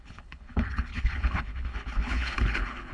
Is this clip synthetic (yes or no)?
yes